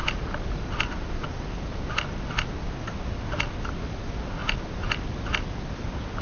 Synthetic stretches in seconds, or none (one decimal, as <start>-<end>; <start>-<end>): none